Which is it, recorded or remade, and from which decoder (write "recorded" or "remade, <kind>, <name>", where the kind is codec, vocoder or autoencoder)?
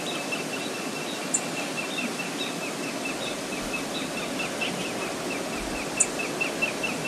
recorded